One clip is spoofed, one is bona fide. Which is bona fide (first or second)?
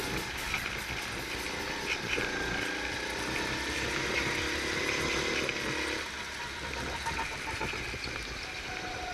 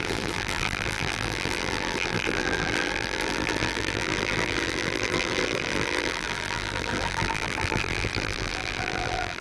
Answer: first